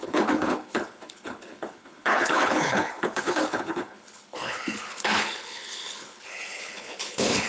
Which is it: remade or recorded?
remade